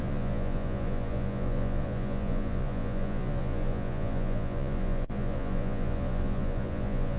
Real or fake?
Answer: fake